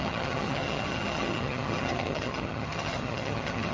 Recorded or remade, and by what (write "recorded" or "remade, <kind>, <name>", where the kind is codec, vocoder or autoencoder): remade, vocoder, HiFi-GAN